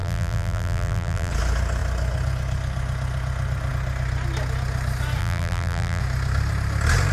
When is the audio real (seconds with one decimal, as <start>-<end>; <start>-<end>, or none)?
1.3-5.2; 6.0-7.1